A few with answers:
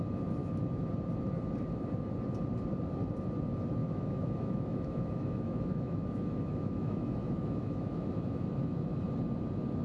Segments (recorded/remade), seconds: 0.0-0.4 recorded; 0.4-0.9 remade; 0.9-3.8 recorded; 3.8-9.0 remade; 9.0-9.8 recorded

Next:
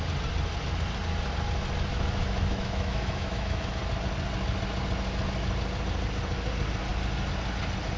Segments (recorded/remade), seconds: 0.0-1.9 recorded; 1.9-3.8 remade; 3.8-8.0 recorded

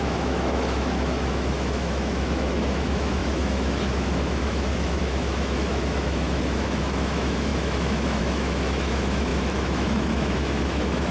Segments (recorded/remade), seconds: 0.0-11.1 remade